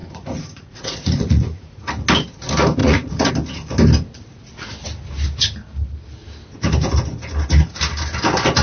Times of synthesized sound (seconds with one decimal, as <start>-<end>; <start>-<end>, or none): 0.0-1.9; 2.8-3.3